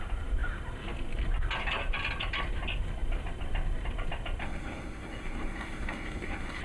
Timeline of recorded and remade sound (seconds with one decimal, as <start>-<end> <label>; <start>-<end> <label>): 0.0-4.4 recorded; 4.4-6.6 remade